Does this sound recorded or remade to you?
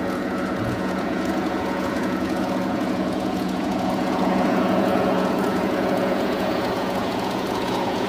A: remade